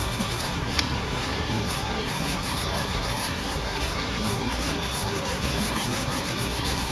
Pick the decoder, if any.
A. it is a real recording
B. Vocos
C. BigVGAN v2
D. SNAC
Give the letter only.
D